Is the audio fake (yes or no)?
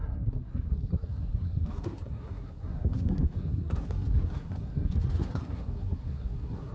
yes